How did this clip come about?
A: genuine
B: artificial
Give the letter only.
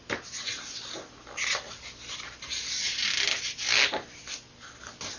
A